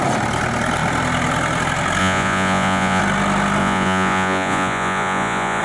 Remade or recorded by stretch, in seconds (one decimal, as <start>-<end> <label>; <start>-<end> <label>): 0.0-2.0 recorded; 2.0-3.0 remade; 3.0-3.6 recorded; 3.6-5.6 remade